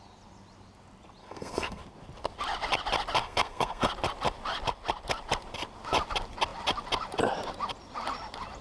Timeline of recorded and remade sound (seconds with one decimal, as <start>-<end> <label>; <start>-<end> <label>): 0.0-1.2 recorded; 1.2-1.8 remade; 1.8-3.2 recorded; 3.2-3.9 remade; 3.9-8.6 recorded